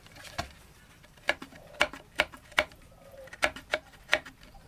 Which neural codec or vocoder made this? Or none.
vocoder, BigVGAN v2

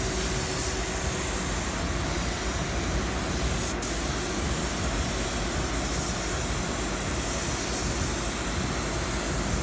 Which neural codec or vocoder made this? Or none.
none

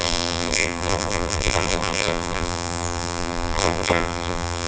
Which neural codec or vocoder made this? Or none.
vocoder, BigVGAN v2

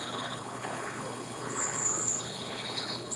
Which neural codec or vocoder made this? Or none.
codec, HILCodec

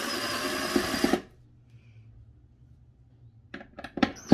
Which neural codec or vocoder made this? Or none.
none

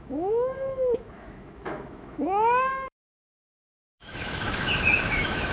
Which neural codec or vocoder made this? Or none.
autoencoder, DAC-VAE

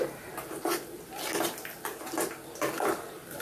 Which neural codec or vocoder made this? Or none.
none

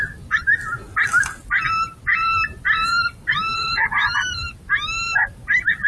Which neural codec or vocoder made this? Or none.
none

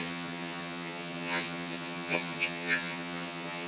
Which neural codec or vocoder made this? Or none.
vocoder, HiFi-GAN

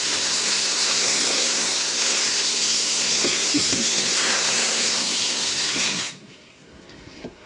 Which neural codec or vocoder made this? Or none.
codec, SNAC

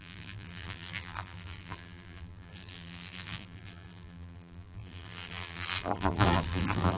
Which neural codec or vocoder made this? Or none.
vocoder, BigVGAN v2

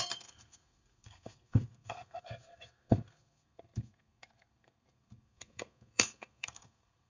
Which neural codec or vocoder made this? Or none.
codec, SNAC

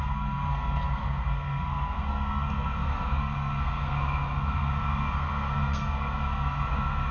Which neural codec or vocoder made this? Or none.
codec, SNAC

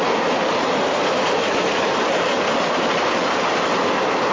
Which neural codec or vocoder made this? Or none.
none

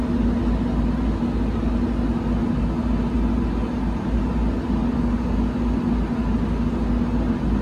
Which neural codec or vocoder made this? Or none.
none